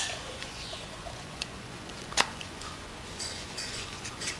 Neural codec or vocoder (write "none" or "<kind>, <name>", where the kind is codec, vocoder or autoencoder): vocoder, Vocos